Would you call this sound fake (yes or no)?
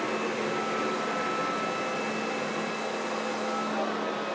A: no